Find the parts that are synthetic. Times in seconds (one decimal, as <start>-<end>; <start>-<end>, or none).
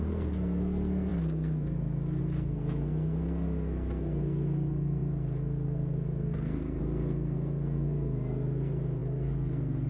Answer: 0.0-9.9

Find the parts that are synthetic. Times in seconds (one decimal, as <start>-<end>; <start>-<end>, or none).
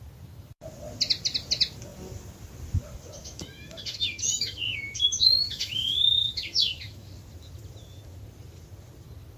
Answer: 3.2-7.1